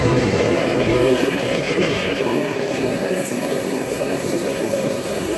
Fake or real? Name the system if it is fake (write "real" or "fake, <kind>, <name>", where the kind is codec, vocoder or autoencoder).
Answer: fake, codec, SNAC